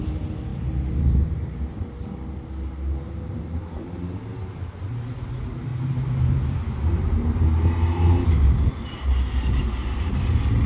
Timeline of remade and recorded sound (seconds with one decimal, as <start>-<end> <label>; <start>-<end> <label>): 0.0-0.5 recorded; 0.5-1.9 remade; 1.9-5.7 recorded; 5.7-7.6 remade; 7.6-10.7 recorded

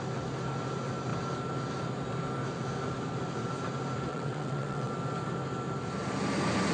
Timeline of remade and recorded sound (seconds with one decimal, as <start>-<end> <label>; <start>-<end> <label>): 0.0-4.1 recorded; 4.1-4.9 remade; 4.9-6.7 recorded

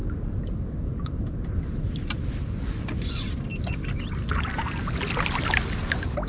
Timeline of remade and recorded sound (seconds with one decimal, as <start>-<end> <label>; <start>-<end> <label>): 0.0-6.3 recorded